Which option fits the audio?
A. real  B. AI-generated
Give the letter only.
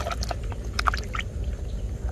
A